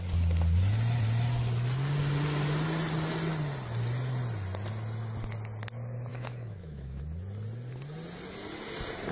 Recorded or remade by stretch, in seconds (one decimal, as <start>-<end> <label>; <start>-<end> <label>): 0.0-6.1 recorded; 6.1-7.0 remade; 7.0-9.1 recorded